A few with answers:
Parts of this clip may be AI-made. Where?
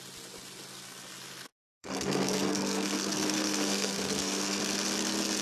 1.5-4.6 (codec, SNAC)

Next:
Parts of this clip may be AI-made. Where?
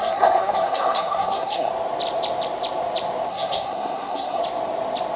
0.0-1.7 (codec, SNAC); 3.3-4.4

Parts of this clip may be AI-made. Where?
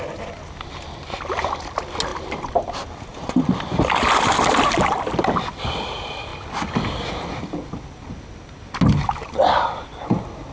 none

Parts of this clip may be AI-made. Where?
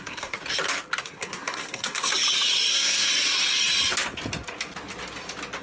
0.0-0.4 (codec, SNAC); 1.0-2.1; 2.7-3.1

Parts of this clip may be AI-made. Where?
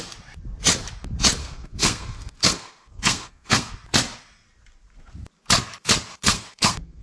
1.4-3.7 (codec, SNAC); 6.1-7.0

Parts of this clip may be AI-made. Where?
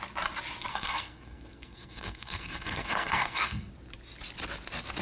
0.7-3.7 (codec, SNAC)